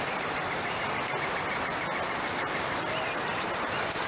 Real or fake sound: real